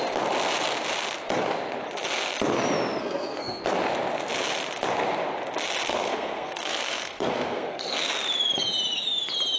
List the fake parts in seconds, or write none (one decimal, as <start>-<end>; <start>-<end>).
3.0-3.6; 5.9-8.1